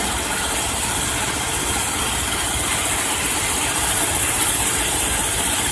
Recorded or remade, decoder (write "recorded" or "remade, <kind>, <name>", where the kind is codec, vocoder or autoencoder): recorded